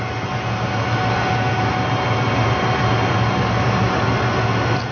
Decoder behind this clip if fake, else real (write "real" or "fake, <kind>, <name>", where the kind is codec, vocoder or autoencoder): real